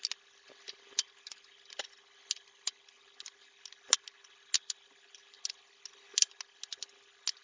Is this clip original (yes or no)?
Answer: yes